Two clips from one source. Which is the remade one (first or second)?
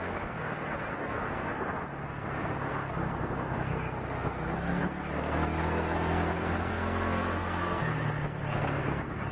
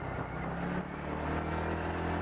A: first